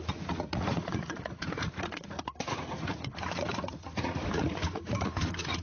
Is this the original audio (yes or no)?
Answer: no